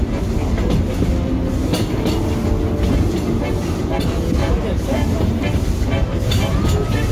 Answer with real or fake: real